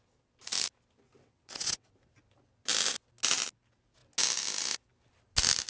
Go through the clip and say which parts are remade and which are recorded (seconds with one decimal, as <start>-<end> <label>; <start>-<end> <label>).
0.0-1.2 recorded; 1.2-1.9 remade; 1.9-5.7 recorded